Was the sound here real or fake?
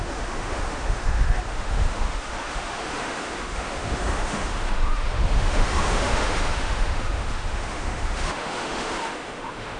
fake